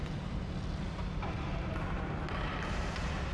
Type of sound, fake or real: fake